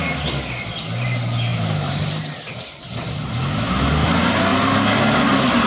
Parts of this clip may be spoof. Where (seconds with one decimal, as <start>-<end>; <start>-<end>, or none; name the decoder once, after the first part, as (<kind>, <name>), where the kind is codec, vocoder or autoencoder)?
1.5-3.3 (vocoder, BigVGAN v2)